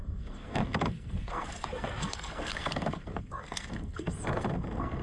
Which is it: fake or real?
fake